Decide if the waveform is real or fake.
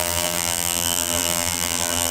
fake